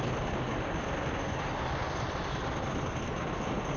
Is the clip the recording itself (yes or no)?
yes